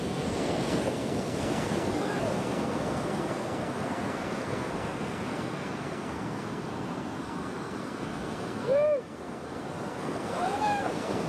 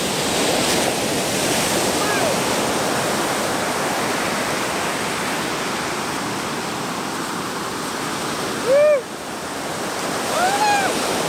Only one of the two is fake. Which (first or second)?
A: first